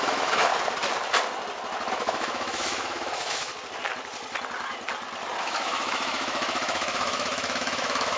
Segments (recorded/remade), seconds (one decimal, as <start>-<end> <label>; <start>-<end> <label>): 0.0-0.5 remade; 0.5-1.9 recorded; 1.9-3.5 remade; 3.5-5.4 recorded; 5.4-8.2 remade